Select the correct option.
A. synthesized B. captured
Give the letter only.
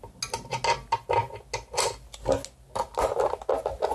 B